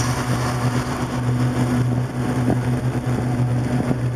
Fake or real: real